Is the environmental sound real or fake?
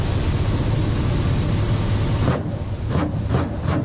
real